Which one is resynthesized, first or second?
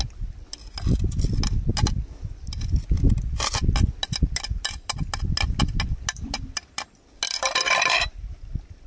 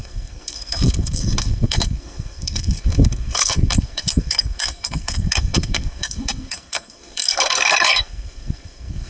second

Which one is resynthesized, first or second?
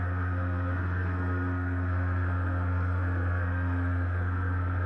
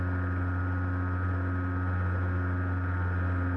first